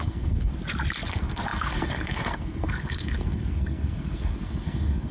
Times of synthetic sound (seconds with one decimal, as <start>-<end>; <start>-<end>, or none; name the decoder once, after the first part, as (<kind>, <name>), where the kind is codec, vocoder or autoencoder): 0.0-0.5 (codec, SNAC); 1.1-5.1